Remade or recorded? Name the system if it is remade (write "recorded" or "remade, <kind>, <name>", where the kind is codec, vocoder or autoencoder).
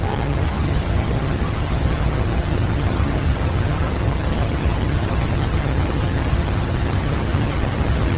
remade, vocoder, HiFi-GAN